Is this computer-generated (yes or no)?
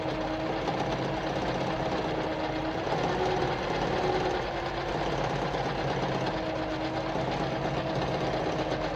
no